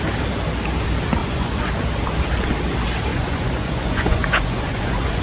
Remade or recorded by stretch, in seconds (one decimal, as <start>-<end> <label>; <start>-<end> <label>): 0.0-1.2 recorded; 1.2-1.7 remade; 1.7-3.1 recorded; 3.1-5.2 remade